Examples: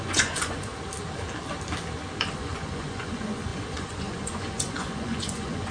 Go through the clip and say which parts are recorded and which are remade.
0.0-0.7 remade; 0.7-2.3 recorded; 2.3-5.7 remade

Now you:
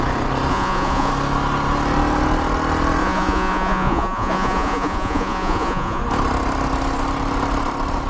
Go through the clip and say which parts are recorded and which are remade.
0.0-0.5 recorded; 0.5-1.1 remade; 1.1-3.0 recorded; 3.0-6.0 remade; 6.0-8.1 recorded